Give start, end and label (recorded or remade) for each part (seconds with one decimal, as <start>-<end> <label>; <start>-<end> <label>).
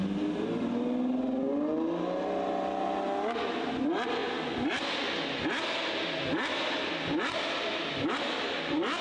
0.0-9.0 recorded